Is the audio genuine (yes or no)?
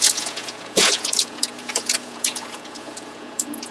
no